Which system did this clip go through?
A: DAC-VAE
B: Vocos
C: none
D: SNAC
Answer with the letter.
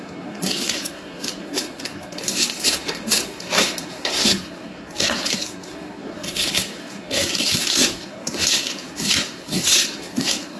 D